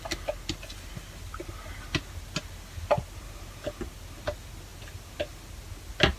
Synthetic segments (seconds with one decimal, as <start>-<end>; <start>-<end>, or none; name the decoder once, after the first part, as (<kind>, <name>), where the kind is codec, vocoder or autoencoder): none